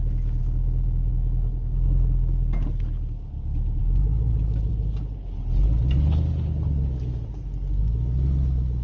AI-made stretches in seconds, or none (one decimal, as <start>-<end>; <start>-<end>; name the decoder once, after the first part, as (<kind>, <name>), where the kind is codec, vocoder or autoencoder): none